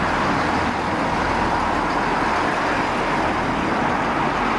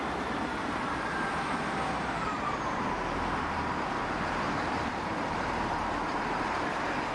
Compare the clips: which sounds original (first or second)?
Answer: first